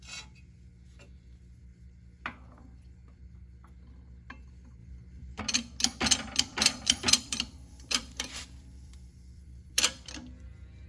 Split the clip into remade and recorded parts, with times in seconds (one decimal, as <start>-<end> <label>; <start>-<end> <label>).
0.0-4.8 recorded; 4.8-5.4 remade; 5.4-6.5 recorded; 6.5-10.1 remade; 10.1-10.9 recorded